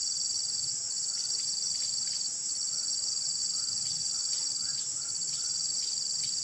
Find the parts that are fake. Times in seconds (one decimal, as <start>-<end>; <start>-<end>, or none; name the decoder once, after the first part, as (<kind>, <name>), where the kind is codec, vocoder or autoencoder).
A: 1.0-1.6 (vocoder, BigVGAN v2)